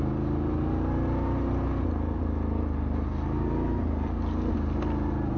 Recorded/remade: recorded